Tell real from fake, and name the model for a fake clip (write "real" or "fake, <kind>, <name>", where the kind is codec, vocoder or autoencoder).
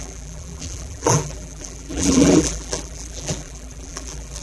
fake, vocoder, BigVGAN v2